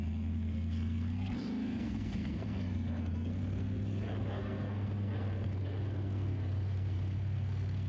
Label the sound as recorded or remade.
remade